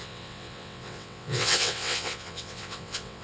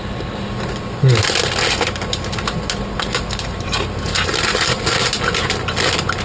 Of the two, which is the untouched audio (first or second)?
second